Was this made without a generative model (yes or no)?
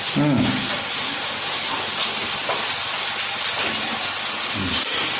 yes